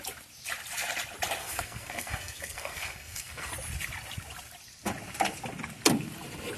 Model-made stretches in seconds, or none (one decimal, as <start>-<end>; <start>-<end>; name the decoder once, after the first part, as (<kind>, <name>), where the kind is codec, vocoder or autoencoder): 1.4-3.5 (codec, SNAC)

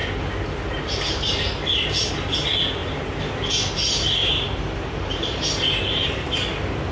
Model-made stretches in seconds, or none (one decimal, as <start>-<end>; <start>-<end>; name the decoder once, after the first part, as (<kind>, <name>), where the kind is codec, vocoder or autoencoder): 4.2-6.1 (vocoder, BigVGAN v2)

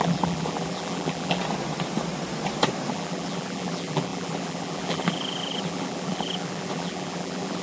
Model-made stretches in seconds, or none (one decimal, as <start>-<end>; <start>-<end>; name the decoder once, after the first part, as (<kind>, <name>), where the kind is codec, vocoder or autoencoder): 0.0-1.4 (vocoder, BigVGAN v2); 2.9-7.6

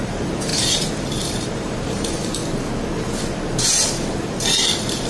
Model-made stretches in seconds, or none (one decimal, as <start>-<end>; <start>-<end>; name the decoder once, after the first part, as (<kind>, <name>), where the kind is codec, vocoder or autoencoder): 0.0-2.4 (vocoder, BigVGAN v2)

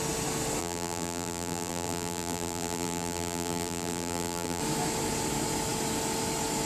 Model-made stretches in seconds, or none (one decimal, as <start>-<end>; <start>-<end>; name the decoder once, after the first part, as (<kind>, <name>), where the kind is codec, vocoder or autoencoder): 0.6-4.6 (vocoder, BigVGAN v2)

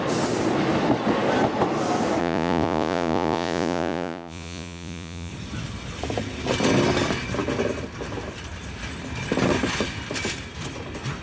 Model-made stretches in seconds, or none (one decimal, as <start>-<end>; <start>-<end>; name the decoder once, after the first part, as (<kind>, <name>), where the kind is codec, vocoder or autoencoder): 2.2-5.3 (vocoder, Vocos)